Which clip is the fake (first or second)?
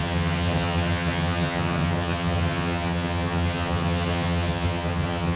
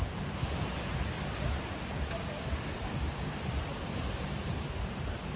first